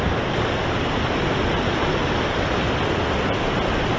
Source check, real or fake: real